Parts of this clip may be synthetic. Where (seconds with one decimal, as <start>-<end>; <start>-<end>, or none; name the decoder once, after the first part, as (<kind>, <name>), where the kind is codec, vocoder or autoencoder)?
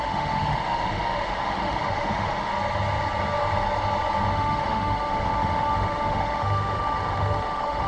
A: 0.0-2.5 (autoencoder, DAC-VAE); 4.3-7.9